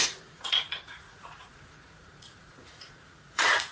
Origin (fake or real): fake